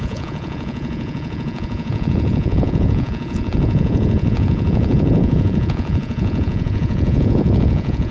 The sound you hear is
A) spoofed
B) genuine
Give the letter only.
A